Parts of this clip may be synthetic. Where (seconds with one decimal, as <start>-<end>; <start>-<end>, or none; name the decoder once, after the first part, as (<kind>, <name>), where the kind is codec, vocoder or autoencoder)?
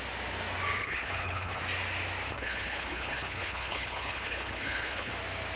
0.8-1.6 (codec, HILCodec); 2.3-5.1